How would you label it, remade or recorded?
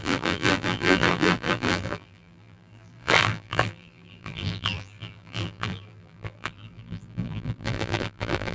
remade